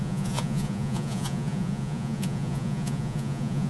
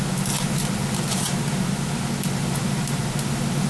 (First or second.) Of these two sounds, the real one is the second